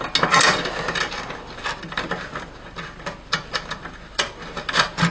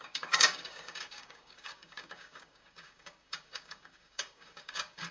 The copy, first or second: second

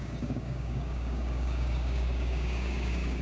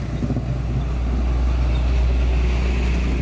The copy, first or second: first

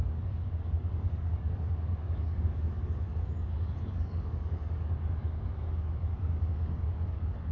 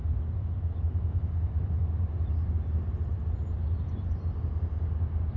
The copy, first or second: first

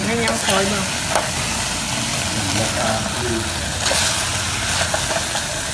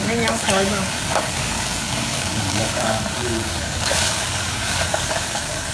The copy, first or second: second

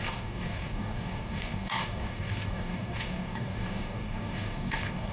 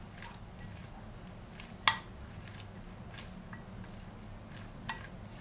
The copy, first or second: first